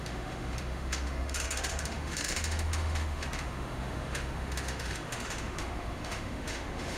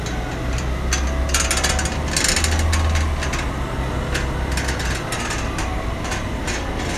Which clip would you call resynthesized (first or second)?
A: first